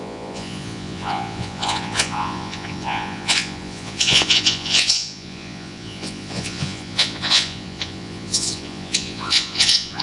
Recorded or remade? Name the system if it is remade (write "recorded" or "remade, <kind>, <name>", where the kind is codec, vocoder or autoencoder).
remade, vocoder, Vocos